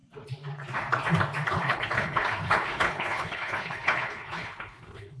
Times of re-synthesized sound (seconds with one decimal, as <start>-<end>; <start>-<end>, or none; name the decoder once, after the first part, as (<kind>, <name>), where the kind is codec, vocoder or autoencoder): 1.5-5.2 (codec, HILCodec)